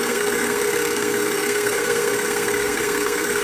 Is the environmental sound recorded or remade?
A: remade